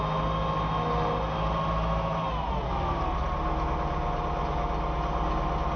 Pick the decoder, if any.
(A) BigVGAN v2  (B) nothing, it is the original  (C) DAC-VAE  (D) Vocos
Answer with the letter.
B